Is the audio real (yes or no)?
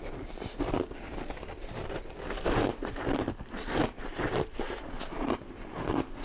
yes